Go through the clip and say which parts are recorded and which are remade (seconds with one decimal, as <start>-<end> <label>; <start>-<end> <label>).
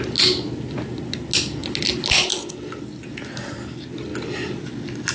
0.0-5.1 recorded